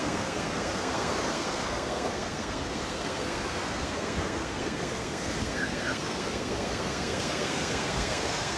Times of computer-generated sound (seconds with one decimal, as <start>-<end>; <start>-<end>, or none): 0.0-8.6